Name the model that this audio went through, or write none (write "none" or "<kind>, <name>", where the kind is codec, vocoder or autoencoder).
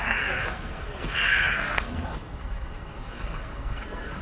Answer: codec, SNAC